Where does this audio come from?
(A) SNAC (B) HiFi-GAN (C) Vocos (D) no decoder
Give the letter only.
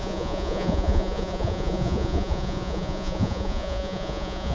C